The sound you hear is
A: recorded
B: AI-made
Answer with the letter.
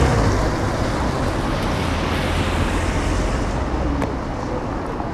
A